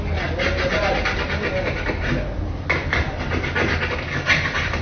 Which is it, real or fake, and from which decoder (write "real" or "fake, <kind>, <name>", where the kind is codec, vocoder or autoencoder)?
real